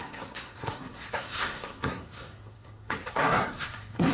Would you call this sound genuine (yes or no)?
no